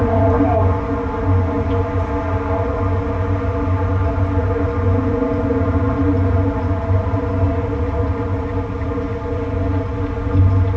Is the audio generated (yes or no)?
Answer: no